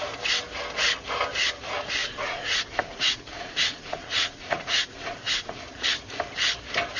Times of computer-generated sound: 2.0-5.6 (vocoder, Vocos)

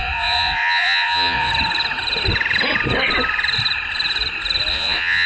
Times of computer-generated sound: 0.0-1.5 (vocoder, Vocos); 4.7-5.3

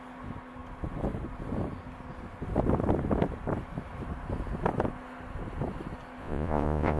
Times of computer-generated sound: 6.2-7.0 (vocoder, Vocos)

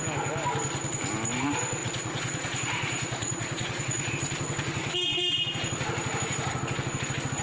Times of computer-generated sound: 1.8-4.1 (vocoder, Vocos)

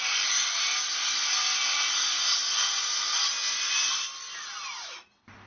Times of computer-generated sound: none